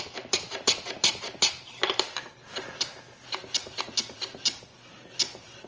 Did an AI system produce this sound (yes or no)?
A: no